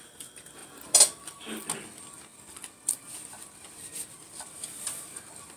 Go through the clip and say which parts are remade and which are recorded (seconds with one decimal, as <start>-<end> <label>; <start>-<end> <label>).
0.0-2.3 recorded; 2.3-5.6 remade